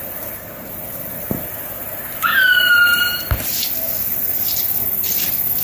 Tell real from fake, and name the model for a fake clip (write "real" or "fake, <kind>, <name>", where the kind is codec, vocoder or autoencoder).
real